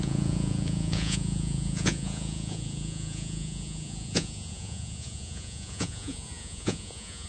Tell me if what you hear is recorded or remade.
remade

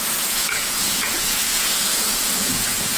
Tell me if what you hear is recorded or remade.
remade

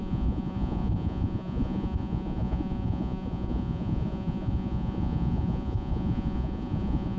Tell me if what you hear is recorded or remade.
remade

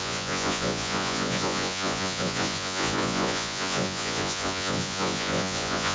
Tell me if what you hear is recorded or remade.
remade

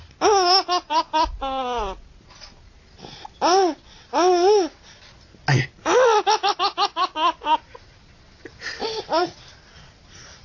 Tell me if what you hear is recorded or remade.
recorded